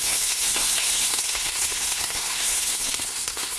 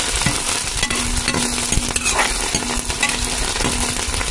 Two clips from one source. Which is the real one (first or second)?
second